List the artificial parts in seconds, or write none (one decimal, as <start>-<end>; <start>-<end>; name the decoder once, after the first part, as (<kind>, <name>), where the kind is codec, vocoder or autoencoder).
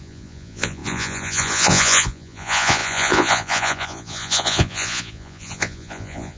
0.0-6.4 (vocoder, Vocos)